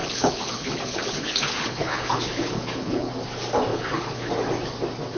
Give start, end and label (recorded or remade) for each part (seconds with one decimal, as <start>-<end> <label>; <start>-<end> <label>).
0.0-3.1 remade; 3.1-3.7 recorded; 3.7-4.3 remade; 4.3-5.2 recorded